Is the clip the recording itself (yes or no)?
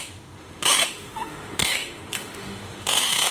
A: no